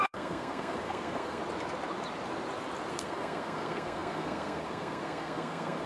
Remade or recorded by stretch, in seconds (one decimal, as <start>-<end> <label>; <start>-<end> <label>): 0.0-1.4 remade; 1.4-2.9 recorded; 2.9-5.9 remade